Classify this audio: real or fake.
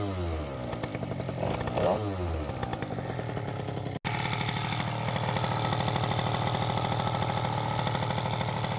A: real